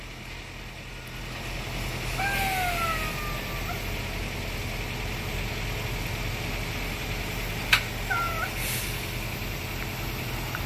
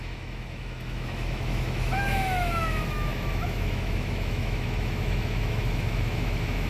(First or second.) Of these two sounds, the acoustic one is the first